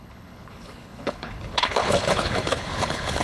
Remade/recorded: remade